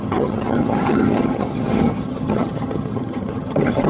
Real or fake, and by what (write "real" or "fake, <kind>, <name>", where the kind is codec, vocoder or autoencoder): fake, vocoder, HiFi-GAN